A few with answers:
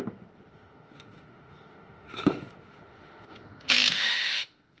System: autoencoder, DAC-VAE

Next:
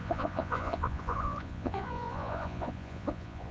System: vocoder, Vocos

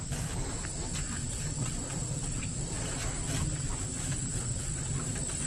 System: none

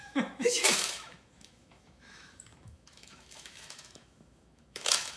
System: autoencoder, DAC-VAE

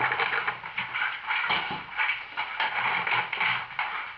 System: none